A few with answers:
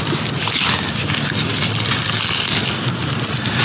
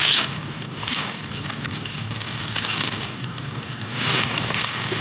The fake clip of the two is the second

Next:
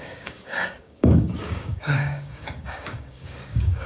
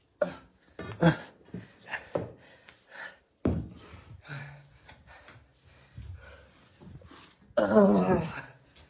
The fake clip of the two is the first